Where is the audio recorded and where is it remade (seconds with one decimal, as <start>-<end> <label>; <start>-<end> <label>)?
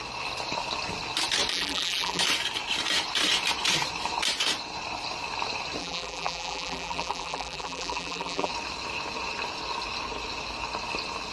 0.0-1.5 recorded; 1.5-2.2 remade; 2.2-5.8 recorded; 5.8-8.5 remade; 8.5-11.3 recorded